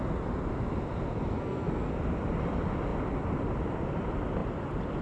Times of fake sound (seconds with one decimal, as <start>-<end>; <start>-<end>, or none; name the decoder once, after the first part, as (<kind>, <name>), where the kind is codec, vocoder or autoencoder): 1.3-1.9 (codec, SNAC)